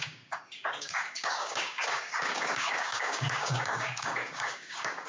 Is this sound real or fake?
fake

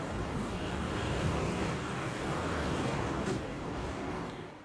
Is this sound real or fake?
fake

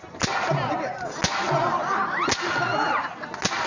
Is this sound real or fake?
real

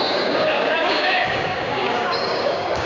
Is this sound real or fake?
fake